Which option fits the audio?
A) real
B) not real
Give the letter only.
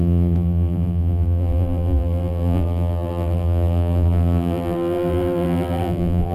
B